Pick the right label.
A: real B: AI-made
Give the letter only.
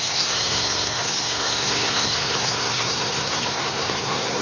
B